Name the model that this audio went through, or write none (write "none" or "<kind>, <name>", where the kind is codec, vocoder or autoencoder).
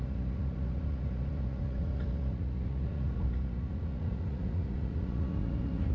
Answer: vocoder, Vocos